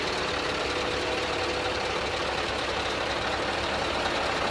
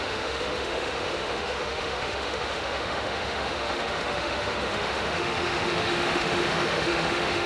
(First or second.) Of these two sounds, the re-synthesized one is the second